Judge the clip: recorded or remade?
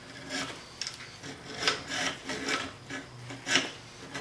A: recorded